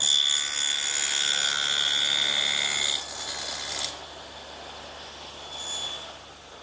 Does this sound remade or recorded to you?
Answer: recorded